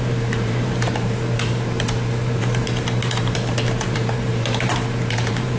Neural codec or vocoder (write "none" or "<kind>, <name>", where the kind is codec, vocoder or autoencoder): vocoder, BigVGAN v2